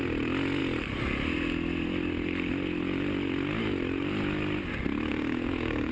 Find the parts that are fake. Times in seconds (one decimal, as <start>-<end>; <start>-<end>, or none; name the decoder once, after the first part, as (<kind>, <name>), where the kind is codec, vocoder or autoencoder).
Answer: 5.1-5.9 (codec, DAC)